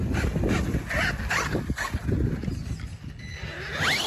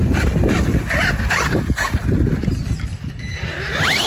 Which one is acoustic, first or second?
first